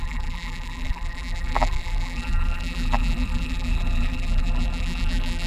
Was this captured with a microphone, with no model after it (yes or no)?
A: no